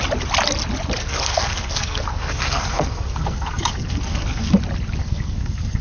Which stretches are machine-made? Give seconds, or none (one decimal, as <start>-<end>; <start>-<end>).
1.0-4.5; 5.0-5.8